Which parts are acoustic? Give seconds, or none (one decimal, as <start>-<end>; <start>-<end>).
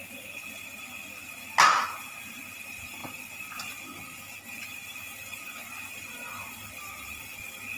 0.0-7.8